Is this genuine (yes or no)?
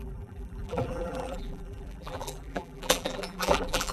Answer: no